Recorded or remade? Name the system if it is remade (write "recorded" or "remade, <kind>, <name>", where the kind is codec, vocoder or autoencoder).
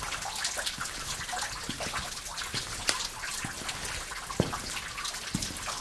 recorded